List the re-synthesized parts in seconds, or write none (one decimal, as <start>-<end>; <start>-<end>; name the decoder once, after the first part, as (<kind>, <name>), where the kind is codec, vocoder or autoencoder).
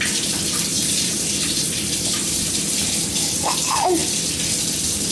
0.7-2.9 (vocoder, BigVGAN v2)